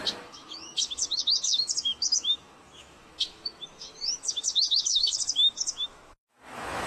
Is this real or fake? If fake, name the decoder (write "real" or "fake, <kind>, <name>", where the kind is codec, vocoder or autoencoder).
fake, autoencoder, DAC-VAE